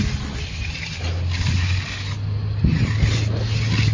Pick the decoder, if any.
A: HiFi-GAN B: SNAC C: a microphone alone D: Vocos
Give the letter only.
C